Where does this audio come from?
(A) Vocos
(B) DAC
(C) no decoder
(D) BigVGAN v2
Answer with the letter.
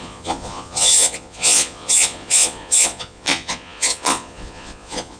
A